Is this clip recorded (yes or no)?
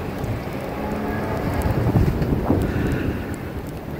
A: no